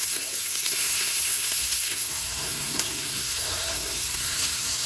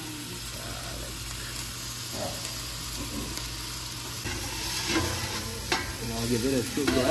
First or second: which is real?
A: second